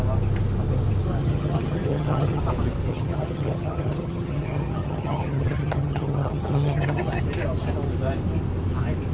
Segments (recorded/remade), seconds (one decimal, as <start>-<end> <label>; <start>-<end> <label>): 0.0-1.2 recorded; 1.2-2.4 remade; 2.4-2.9 recorded; 2.9-7.2 remade; 7.2-9.1 recorded